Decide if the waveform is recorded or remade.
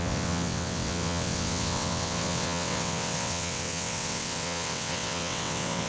remade